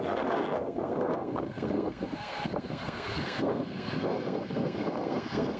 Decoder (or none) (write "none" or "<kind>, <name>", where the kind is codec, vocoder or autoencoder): codec, SNAC